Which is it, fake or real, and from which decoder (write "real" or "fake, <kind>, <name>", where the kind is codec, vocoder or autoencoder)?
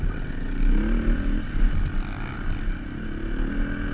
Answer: real